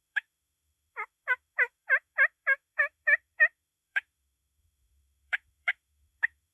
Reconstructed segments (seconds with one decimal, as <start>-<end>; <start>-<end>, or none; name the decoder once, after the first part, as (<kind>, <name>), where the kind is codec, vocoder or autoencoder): 0.0-6.5 (autoencoder, DAC-VAE)